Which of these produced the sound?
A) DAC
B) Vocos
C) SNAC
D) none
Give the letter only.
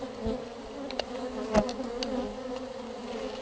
D